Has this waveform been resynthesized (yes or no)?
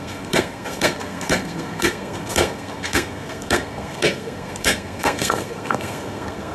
yes